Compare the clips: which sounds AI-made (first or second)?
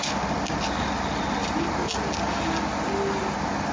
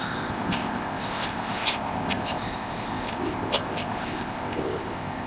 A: second